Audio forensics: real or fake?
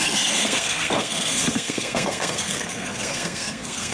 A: fake